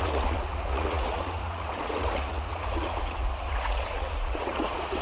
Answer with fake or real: fake